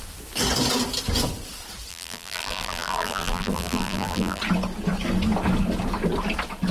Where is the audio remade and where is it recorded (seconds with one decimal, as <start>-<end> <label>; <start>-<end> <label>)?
0.0-1.9 recorded; 1.9-4.4 remade; 4.4-6.7 recorded